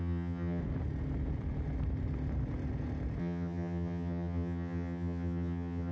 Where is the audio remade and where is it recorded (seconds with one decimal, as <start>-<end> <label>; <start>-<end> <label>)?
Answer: 0.0-0.6 remade; 0.6-3.2 recorded; 3.2-5.9 remade

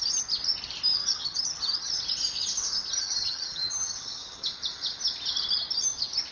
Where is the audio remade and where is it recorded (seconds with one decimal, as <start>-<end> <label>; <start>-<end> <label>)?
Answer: 0.0-1.0 recorded; 1.0-2.0 remade; 2.0-3.0 recorded; 3.0-4.5 remade; 4.5-6.3 recorded